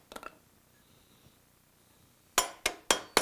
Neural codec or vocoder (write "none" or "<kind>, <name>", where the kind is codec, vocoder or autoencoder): none